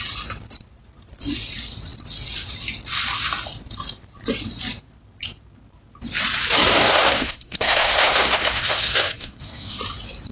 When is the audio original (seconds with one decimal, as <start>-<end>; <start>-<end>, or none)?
0.0-6.8; 9.8-10.3